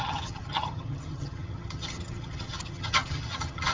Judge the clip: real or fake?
fake